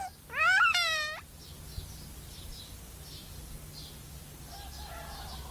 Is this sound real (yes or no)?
yes